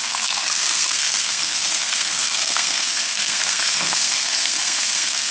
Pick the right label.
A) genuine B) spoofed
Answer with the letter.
B